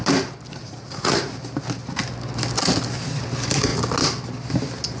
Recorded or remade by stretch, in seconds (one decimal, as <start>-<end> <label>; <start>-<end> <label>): 0.0-0.5 recorded; 0.5-1.3 remade; 1.3-5.0 recorded